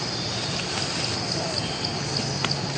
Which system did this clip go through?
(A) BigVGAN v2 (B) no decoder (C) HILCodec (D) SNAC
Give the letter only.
B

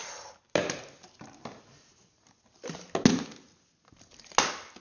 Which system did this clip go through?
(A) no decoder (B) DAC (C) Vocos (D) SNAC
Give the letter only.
A